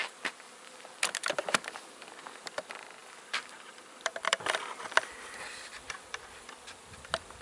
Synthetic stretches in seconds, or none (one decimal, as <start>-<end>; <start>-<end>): 3.0-6.2